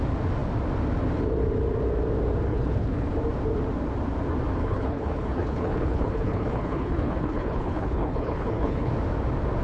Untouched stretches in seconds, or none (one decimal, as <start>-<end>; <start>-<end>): 0.0-2.5; 3.1-4.6; 8.9-9.6